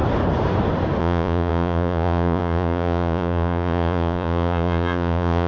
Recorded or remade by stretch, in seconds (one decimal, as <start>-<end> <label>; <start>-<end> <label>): 0.0-1.0 recorded; 1.0-5.5 remade